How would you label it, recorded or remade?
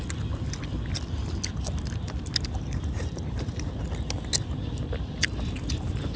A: recorded